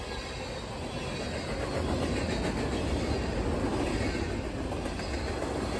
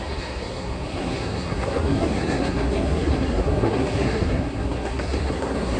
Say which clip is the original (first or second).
first